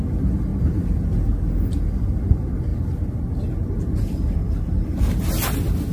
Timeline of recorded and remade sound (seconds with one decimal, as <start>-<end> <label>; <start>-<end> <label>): 0.0-5.9 recorded